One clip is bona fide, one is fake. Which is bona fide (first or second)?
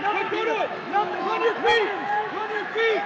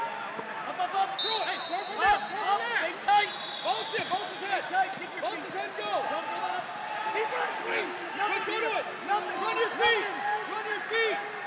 second